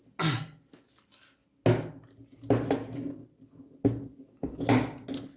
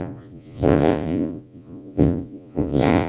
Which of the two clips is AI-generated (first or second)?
second